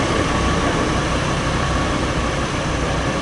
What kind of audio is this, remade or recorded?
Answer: remade